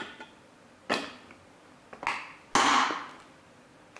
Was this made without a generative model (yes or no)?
yes